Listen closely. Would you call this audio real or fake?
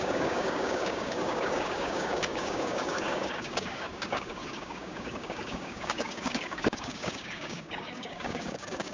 fake